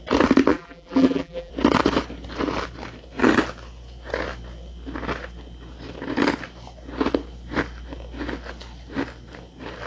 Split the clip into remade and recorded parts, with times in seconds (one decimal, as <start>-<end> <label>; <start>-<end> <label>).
0.0-0.5 recorded; 0.5-1.5 remade; 1.5-9.9 recorded